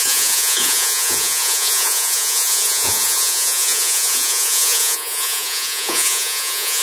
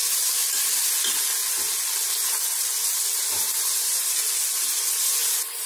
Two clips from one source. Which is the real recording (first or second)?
second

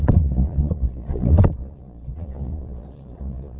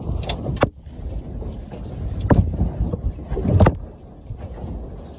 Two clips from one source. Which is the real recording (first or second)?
second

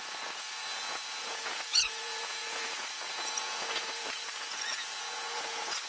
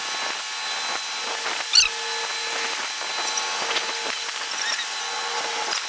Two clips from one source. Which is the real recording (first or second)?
second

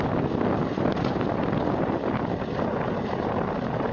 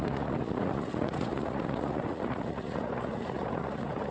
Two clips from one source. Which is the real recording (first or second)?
first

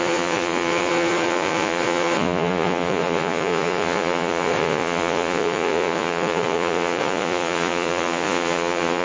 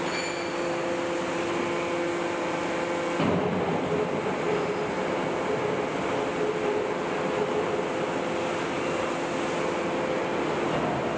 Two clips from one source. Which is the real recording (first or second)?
second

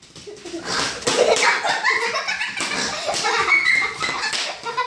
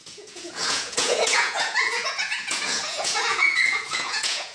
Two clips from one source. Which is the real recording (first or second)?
first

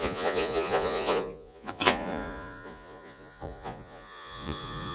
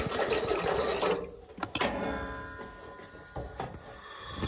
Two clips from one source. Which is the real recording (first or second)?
second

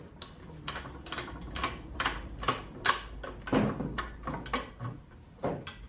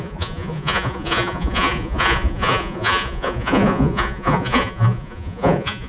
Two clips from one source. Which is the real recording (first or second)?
first